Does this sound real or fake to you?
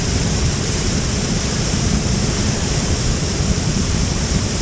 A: fake